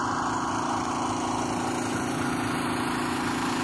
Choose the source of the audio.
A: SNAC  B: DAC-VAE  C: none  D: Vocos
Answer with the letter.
C